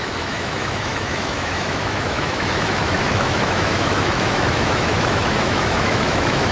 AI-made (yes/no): yes